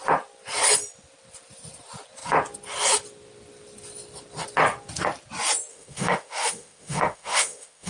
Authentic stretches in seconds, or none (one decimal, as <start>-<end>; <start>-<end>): 0.0-5.7

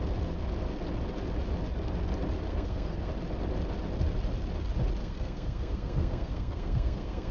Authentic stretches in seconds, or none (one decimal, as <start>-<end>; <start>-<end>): 0.0-2.5; 3.1-5.0

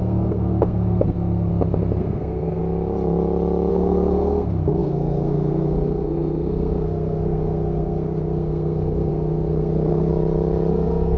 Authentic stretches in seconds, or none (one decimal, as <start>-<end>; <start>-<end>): 1.5-2.0; 2.6-3.7; 10.1-10.7